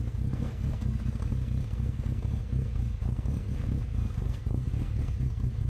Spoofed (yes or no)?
yes